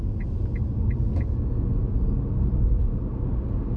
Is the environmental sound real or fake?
real